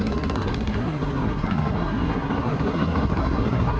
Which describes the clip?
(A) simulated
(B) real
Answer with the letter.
A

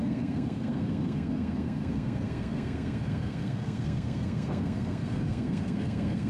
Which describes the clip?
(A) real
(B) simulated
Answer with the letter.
B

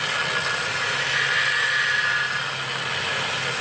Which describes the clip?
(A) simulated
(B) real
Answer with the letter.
B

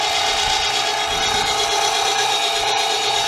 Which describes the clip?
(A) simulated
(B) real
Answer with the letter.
B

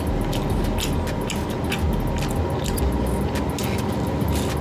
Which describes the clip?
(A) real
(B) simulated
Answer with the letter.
A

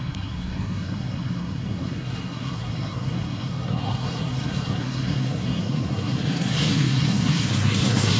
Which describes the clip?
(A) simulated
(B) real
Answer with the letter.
A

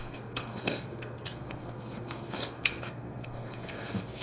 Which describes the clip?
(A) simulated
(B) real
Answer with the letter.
A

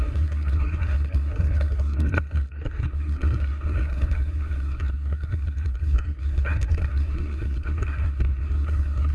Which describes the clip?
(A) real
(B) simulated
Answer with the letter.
B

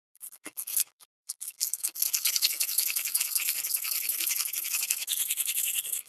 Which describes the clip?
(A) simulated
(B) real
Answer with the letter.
A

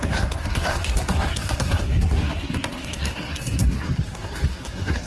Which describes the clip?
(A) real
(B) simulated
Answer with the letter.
B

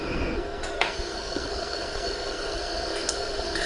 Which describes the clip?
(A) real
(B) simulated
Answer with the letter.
B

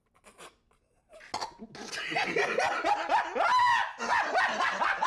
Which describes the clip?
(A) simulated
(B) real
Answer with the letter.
B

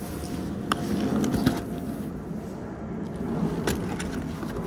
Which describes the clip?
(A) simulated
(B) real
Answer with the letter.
B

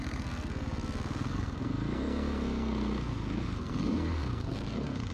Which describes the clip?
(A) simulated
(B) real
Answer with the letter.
A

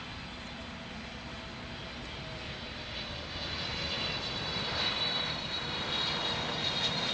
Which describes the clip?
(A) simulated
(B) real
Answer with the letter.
B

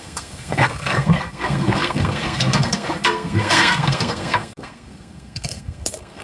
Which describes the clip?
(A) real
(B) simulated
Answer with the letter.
B